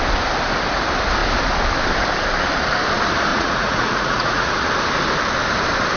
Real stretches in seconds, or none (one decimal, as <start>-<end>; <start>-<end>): 0.0-3.3; 4.5-6.0